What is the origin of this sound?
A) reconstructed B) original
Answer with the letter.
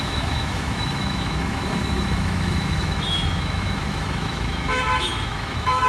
A